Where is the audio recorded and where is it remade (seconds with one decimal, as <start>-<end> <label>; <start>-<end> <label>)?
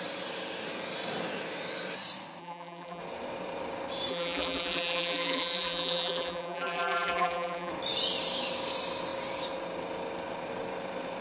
0.0-2.4 recorded; 2.4-3.0 remade; 3.0-4.1 recorded; 4.1-7.7 remade; 7.7-11.2 recorded